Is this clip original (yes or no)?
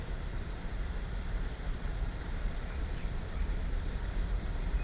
no